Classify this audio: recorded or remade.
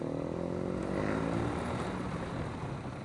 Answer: recorded